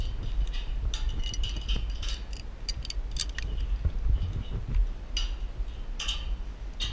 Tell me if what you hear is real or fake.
real